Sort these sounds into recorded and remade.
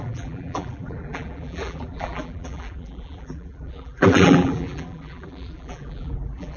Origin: remade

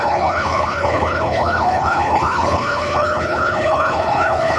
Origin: remade